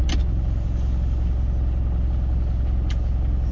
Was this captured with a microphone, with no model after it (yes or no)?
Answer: yes